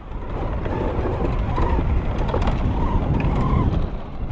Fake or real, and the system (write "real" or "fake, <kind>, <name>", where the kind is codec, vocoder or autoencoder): real